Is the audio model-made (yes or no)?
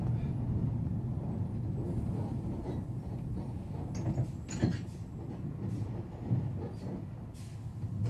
no